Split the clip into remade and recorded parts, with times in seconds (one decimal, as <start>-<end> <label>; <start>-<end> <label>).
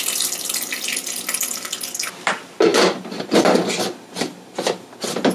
0.0-5.3 recorded